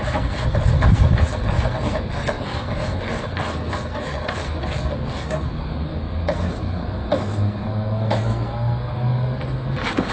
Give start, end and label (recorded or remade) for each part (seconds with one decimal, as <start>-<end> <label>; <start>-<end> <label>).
0.0-10.1 remade